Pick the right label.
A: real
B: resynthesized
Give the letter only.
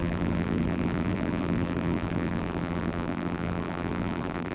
B